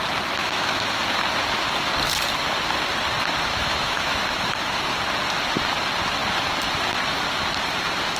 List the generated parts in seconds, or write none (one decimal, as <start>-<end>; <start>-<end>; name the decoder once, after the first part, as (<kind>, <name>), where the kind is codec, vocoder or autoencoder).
0.4-1.0 (autoencoder, DAC-VAE); 3.5-5.0

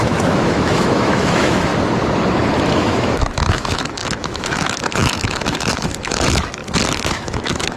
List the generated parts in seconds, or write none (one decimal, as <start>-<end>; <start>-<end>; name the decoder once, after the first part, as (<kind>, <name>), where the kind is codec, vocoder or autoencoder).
0.0-1.7 (autoencoder, DAC-VAE); 2.7-6.6; 7.1-7.8

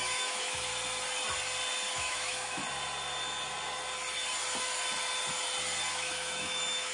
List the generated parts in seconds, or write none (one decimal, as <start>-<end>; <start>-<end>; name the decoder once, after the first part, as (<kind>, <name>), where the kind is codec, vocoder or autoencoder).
0.0-0.7 (autoencoder, DAC-VAE); 1.9-2.6; 5.9-6.9

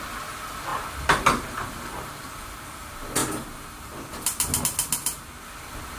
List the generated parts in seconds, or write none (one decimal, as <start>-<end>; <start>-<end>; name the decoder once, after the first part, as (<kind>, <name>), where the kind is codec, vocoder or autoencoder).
none

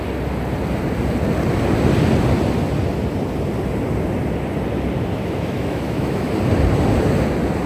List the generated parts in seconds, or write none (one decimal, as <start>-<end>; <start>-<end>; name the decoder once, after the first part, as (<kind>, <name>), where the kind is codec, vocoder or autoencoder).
5.2-6.3 (autoencoder, DAC-VAE)

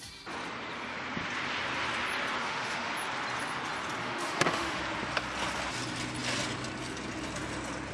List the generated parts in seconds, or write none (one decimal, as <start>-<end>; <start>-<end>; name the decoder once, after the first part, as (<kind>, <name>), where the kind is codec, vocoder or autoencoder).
2.4-2.9 (autoencoder, DAC-VAE); 4.0-4.8

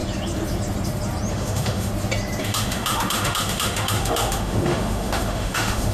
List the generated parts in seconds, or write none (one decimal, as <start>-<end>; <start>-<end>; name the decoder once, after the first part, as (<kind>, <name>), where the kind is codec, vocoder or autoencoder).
1.3-1.9 (autoencoder, DAC-VAE); 2.4-5.9

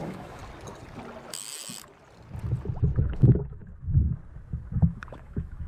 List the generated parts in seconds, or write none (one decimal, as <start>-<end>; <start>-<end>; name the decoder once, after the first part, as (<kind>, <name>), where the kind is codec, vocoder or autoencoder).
0.0-0.4 (autoencoder, DAC-VAE); 3.0-3.6; 4.8-5.7